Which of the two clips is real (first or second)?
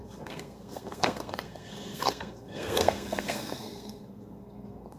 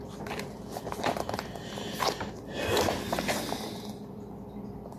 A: second